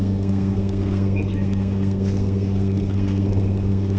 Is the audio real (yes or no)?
no